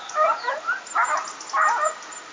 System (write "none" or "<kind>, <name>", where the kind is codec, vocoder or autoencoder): none